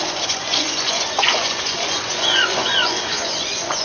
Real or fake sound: fake